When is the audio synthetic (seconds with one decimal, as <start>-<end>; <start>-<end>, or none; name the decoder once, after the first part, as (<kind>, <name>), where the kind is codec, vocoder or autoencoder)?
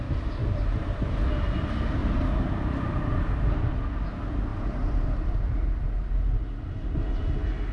0.4-1.1 (vocoder, BigVGAN v2); 2.0-3.6; 4.5-5.3